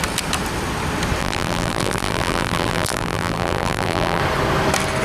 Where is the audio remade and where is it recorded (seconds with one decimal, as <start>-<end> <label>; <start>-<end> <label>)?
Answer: 0.0-1.2 recorded; 1.2-4.2 remade; 4.2-5.0 recorded